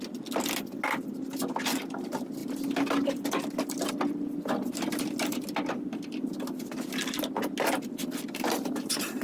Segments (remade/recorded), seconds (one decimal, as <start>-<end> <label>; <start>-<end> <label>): 0.0-9.2 recorded